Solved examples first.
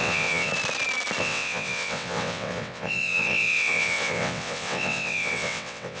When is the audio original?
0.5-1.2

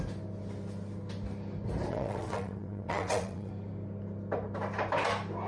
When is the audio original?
0.0-1.9; 3.5-5.5

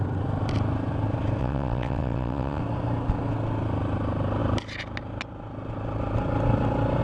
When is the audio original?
0.0-1.4; 2.6-7.0